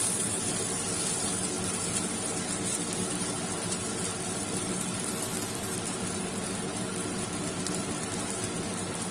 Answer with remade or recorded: recorded